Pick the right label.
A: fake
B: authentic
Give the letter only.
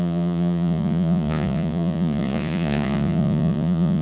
A